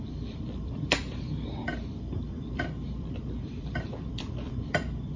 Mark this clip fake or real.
fake